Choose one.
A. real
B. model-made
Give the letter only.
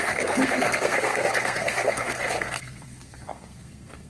B